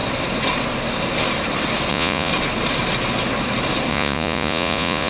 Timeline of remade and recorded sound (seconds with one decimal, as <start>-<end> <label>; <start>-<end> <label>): 0.0-1.9 recorded; 1.9-2.3 remade; 2.3-3.9 recorded; 3.9-5.1 remade